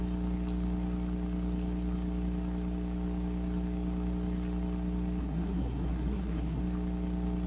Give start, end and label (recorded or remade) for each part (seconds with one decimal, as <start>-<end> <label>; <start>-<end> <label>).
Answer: 0.0-5.2 recorded; 5.2-6.6 remade; 6.6-7.5 recorded